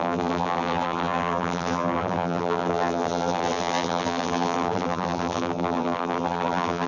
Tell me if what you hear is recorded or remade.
remade